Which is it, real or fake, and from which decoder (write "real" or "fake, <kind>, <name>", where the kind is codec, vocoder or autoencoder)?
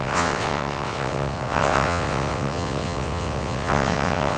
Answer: fake, vocoder, WaveNeXt